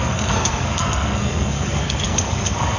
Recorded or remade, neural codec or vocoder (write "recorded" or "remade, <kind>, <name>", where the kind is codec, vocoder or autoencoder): remade, codec, SNAC